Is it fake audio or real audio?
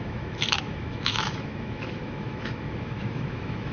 fake